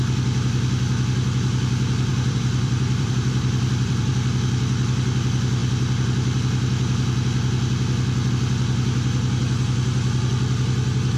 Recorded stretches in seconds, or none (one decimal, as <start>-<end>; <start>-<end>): 0.0-2.1; 4.1-11.2